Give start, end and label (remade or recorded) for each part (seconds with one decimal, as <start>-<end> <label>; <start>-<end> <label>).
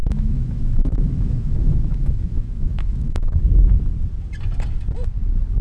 0.0-3.4 remade; 3.4-5.6 recorded